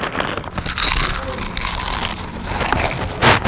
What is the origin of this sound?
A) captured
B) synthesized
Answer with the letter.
A